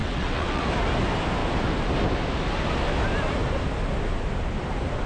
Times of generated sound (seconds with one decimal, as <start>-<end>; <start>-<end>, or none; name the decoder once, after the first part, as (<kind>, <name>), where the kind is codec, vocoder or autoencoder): 0.0-0.6 (vocoder, WaveNeXt)